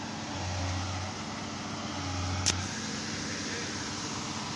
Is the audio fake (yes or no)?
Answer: no